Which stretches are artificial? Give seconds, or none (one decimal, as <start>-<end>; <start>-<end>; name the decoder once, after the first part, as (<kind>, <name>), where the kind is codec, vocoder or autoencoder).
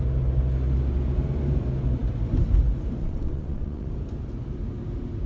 3.0-3.9 (vocoder, WaveNeXt)